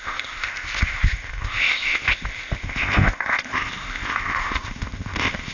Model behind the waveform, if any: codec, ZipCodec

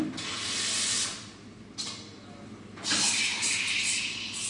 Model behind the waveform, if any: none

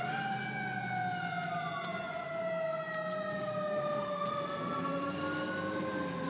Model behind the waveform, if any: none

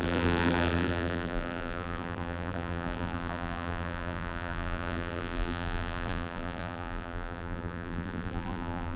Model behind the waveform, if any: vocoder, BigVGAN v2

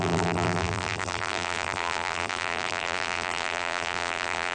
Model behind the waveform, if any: vocoder, BigVGAN v2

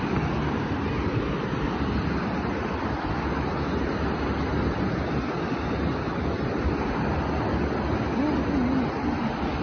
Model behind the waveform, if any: none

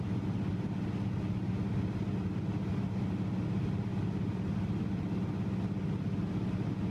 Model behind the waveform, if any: none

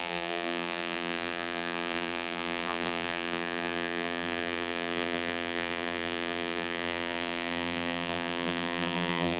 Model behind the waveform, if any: vocoder, BigVGAN v2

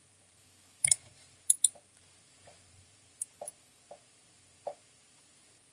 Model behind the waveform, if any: vocoder, BigVGAN v2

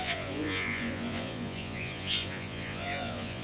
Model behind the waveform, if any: vocoder, Vocos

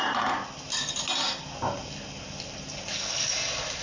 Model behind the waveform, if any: none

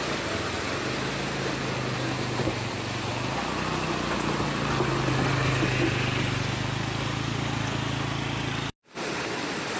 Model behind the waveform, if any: none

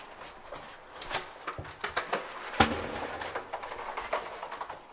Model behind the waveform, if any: none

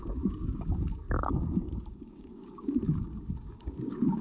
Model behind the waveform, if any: codec, DAC